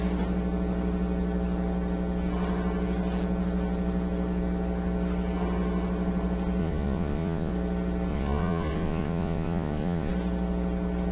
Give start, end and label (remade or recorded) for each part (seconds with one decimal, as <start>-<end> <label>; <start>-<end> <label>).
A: 0.0-6.6 recorded; 6.6-7.5 remade; 7.5-8.1 recorded; 8.1-10.1 remade; 10.1-11.1 recorded